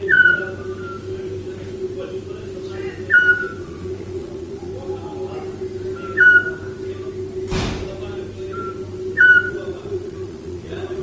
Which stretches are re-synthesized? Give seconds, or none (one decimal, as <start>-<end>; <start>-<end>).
0.0-0.4; 3.6-4.7; 9.5-11.0